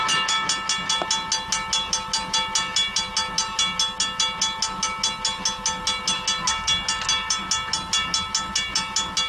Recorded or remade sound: recorded